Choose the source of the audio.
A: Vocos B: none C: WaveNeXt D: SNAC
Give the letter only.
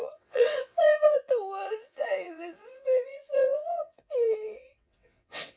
C